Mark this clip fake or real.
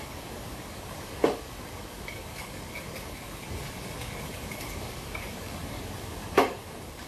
fake